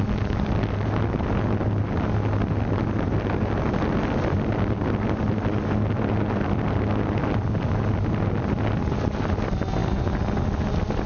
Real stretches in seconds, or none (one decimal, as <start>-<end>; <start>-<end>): 0.0-11.1